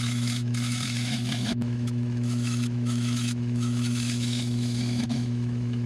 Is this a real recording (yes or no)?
no